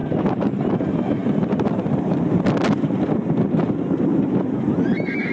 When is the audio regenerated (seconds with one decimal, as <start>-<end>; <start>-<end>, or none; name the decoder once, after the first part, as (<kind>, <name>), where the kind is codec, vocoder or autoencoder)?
0.0-0.6 (vocoder, BigVGAN v2); 1.2-4.0